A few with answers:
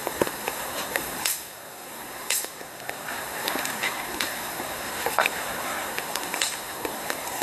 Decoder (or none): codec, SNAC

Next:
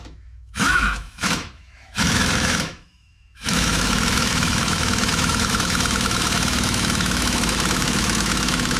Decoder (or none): autoencoder, DAC-VAE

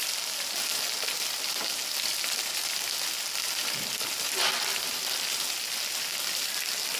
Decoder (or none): none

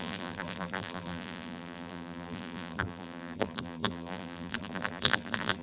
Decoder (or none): vocoder, BigVGAN v2